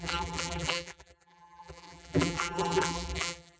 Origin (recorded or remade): remade